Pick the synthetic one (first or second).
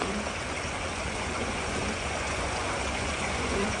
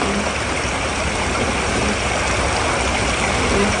first